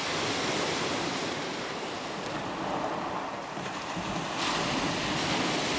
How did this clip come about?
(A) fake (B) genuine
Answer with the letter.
B